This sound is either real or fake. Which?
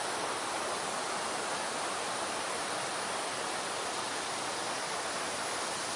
real